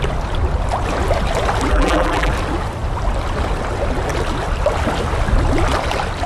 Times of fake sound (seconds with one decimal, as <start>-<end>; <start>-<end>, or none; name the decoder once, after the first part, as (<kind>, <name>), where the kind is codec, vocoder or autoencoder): 1.7-2.3 (vocoder, BigVGAN v2)